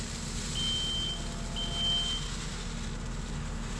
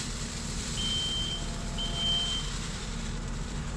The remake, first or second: second